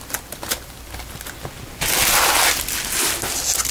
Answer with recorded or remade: recorded